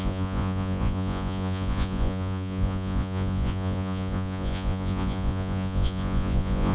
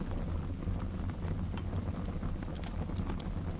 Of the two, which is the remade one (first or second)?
first